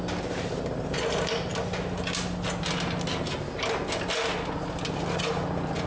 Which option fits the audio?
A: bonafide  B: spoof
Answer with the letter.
A